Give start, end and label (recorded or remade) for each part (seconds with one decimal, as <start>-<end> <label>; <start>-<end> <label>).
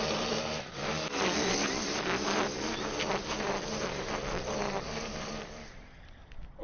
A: 0.0-0.9 remade; 0.9-1.4 recorded; 1.4-6.6 remade